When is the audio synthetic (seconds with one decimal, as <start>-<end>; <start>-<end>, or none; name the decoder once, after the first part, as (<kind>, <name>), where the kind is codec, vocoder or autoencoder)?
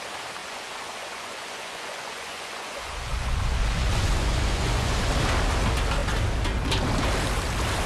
0.4-5.1 (vocoder, Vocos)